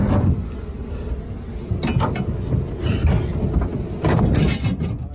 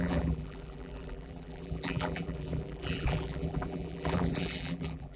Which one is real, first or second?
first